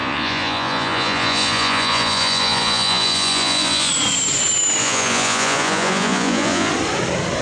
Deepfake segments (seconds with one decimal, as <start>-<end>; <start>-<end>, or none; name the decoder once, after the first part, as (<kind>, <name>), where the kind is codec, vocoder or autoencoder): 0.0-3.9 (vocoder, Vocos); 4.8-6.7